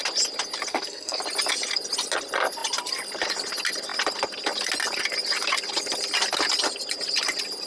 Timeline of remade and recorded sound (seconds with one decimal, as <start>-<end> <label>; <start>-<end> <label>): 0.0-0.7 recorded; 0.7-1.2 remade; 1.2-7.7 recorded